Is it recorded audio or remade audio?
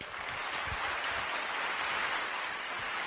recorded